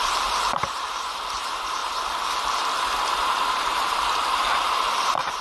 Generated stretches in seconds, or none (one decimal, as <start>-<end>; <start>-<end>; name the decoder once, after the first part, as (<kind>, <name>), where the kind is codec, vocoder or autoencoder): 0.0-5.4 (vocoder, BigVGAN v2)